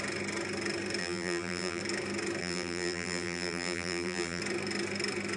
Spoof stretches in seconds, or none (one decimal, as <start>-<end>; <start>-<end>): 1.0-1.8; 2.4-4.4